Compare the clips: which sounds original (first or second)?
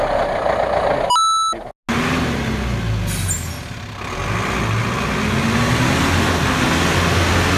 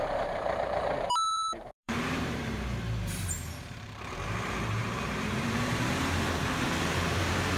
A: first